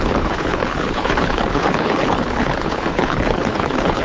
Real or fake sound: fake